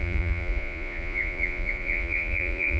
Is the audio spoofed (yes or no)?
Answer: yes